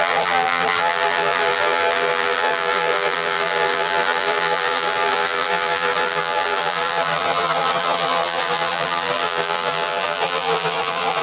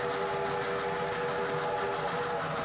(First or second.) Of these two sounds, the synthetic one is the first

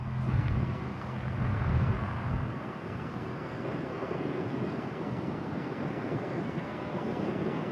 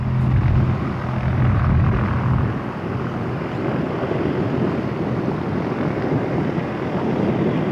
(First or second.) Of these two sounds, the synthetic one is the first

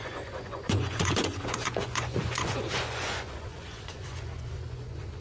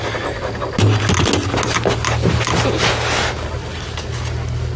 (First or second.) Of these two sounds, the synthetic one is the first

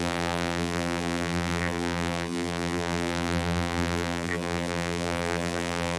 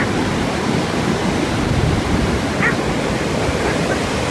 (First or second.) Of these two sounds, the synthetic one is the first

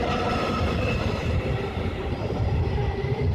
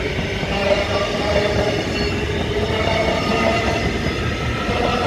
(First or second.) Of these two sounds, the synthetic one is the first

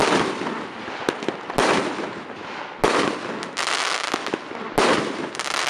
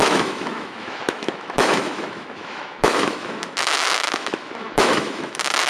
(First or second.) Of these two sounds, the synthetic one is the second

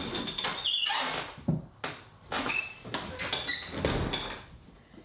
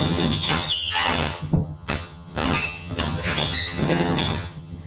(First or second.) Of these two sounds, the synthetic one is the second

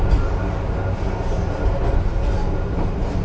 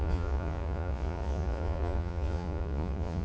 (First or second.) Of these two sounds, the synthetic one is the second